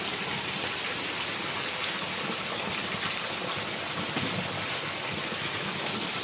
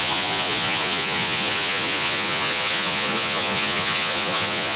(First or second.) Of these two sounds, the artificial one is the second